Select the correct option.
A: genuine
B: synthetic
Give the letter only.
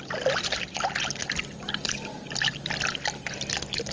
A